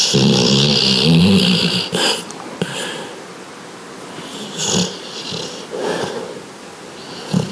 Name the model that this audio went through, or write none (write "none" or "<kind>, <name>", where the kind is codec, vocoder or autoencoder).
none